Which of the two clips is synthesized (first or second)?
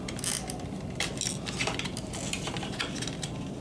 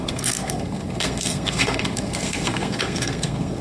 second